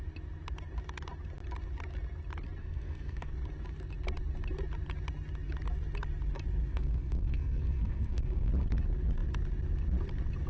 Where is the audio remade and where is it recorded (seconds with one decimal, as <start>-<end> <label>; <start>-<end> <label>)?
0.0-2.6 recorded; 2.6-3.3 remade; 3.3-6.7 recorded; 6.7-8.5 remade; 8.5-10.5 recorded